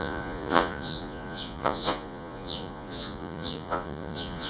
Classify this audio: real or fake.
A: fake